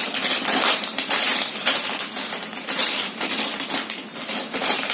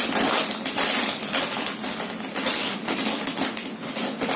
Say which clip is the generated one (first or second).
first